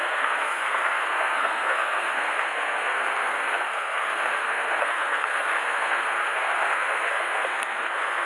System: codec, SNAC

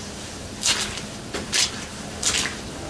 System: none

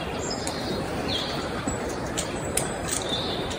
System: vocoder, BigVGAN v2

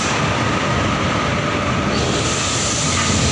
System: none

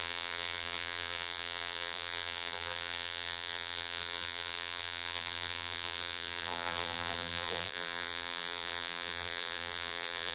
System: vocoder, BigVGAN v2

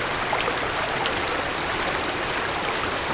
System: vocoder, BigVGAN v2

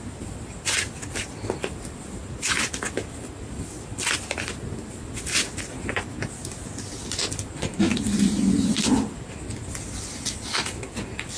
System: none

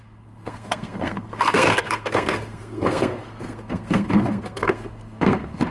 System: codec, SNAC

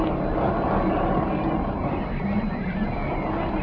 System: none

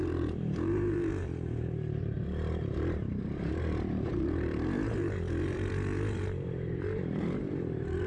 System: vocoder, BigVGAN v2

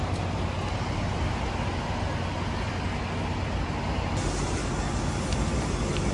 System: none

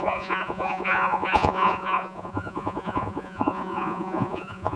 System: vocoder, Vocos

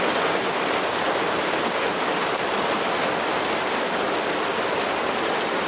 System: none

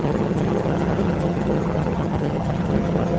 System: vocoder, HiFi-GAN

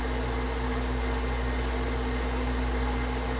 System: none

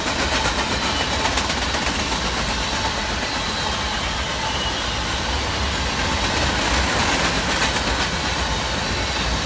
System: none